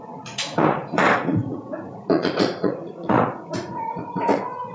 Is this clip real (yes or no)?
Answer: no